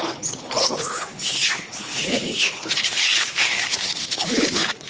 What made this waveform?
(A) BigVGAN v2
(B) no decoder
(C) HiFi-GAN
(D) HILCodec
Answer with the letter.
D